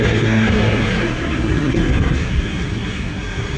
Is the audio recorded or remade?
remade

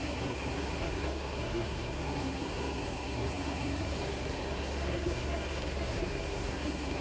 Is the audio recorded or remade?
remade